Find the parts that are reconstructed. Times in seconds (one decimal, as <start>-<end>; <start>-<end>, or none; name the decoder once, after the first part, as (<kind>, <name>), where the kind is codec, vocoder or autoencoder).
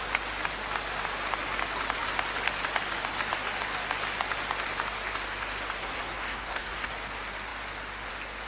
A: 5.8-6.9 (codec, SNAC)